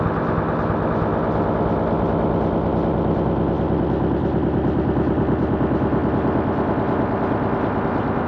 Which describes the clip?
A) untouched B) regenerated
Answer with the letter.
A